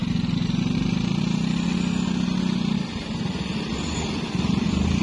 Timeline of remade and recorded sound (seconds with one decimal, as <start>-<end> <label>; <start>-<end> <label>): 0.0-3.0 recorded; 3.0-5.0 remade